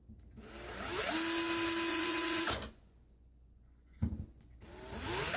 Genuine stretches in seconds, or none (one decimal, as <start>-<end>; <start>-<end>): 0.0-1.9; 4.6-5.4